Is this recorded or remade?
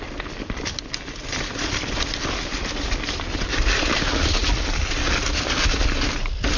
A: recorded